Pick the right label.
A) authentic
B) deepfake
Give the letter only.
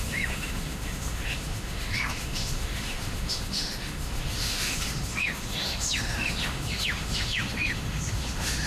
B